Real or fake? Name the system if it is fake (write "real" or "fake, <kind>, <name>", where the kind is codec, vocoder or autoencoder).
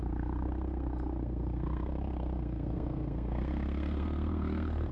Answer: fake, codec, SNAC